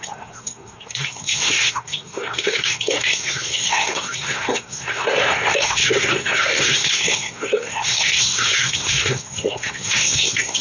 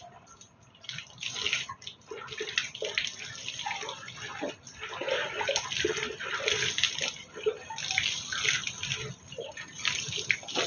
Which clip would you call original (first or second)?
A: second